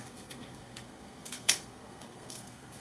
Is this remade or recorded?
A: remade